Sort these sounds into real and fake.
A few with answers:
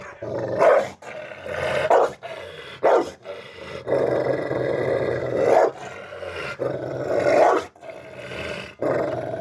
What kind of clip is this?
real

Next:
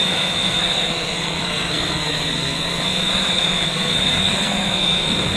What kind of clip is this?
fake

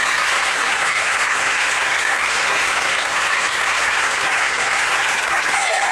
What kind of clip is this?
fake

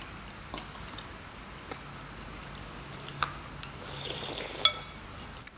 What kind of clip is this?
real